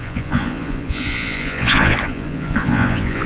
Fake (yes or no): yes